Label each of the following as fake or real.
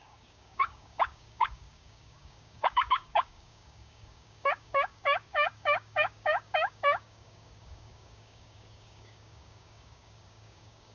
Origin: fake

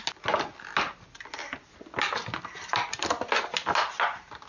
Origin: real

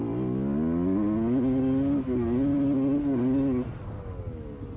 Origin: real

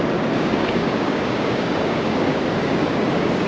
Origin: fake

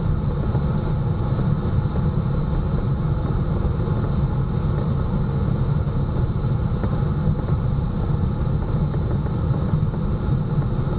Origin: real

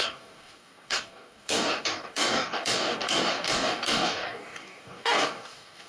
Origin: fake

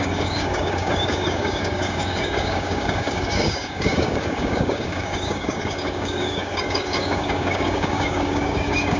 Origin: fake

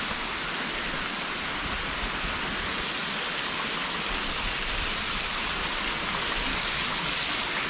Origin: real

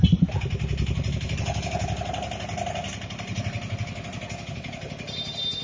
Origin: real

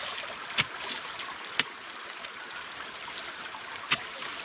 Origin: real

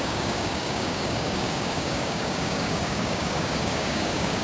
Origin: fake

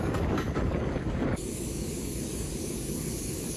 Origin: fake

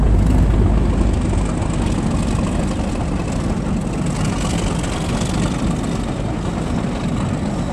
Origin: real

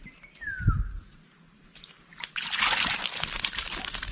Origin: real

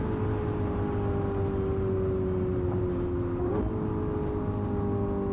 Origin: real